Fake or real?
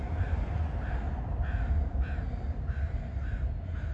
real